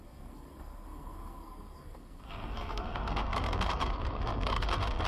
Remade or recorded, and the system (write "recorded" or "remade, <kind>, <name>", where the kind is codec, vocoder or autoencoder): remade, codec, SNAC